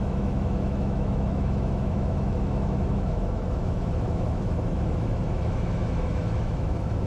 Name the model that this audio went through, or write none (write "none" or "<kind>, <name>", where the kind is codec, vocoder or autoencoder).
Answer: autoencoder, DAC-VAE